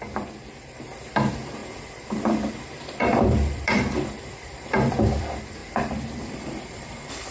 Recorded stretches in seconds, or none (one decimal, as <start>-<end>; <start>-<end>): none